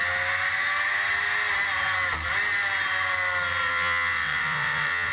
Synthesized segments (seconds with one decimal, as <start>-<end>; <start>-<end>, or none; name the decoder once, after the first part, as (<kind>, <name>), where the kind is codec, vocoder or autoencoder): 3.7-5.1 (vocoder, WaveNeXt)